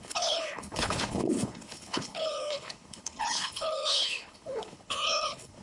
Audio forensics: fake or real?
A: fake